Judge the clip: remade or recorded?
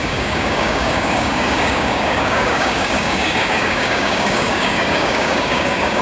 remade